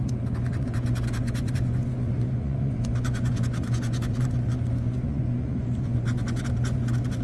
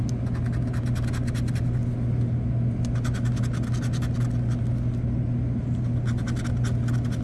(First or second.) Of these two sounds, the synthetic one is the first